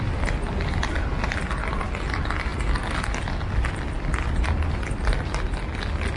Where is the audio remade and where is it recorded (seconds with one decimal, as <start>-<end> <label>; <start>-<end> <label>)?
0.0-6.2 recorded